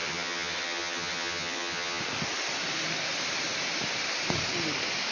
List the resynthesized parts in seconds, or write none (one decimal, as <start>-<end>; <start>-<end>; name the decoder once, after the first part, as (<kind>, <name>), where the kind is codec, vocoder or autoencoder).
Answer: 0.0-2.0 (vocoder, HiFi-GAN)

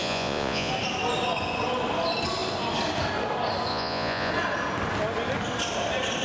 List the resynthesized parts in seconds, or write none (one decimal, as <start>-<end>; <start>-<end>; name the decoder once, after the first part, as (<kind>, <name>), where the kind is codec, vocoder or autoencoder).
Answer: 0.0-0.7 (vocoder, Vocos); 3.7-4.3

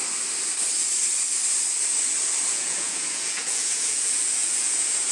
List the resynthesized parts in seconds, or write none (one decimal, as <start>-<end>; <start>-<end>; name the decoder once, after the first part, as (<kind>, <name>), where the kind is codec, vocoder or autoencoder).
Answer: 2.5-5.1 (vocoder, Vocos)

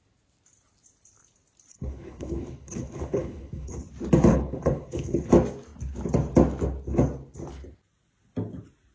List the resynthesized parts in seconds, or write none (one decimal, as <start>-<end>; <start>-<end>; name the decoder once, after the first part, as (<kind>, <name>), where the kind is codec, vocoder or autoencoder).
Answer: 1.7-3.8 (codec, HILCodec); 4.3-5.3

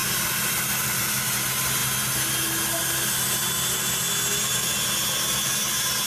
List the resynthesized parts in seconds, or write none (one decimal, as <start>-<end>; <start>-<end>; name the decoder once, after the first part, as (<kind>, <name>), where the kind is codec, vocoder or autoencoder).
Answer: none

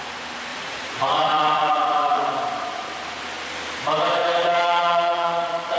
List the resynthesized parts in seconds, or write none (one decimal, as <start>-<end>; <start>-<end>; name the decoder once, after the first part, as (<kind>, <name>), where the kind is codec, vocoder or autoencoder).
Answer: 0.5-2.2 (vocoder, Vocos); 4.2-5.8

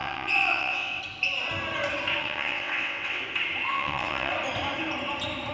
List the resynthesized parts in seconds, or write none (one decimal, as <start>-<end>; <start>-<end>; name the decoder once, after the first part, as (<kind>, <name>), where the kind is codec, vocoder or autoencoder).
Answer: 0.0-1.0 (vocoder, WaveNeXt); 2.2-3.2; 3.7-4.3